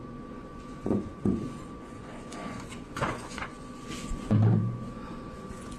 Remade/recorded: remade